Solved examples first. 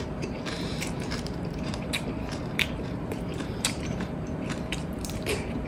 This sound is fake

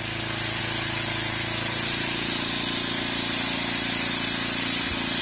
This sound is real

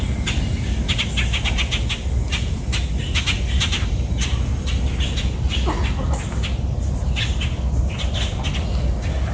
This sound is real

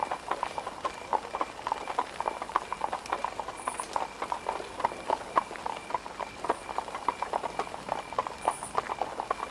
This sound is real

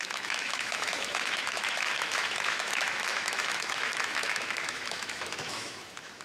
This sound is fake